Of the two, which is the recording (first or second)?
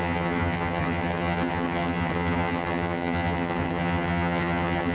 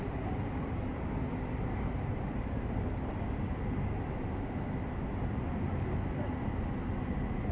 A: second